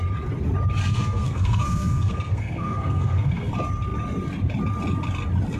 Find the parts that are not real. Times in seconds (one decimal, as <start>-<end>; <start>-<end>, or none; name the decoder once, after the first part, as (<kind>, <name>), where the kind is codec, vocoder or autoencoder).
0.8-3.5 (codec, SNAC)